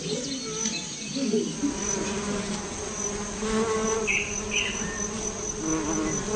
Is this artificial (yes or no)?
no